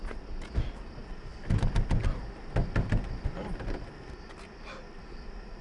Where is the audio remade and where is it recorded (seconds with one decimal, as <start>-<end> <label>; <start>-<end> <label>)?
0.0-5.6 recorded